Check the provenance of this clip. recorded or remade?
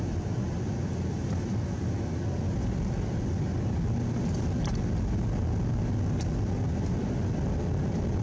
recorded